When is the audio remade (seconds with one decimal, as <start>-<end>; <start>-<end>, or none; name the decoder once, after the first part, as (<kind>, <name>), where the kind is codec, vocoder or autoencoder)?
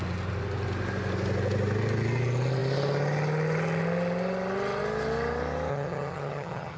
5.7-6.8 (vocoder, HiFi-GAN)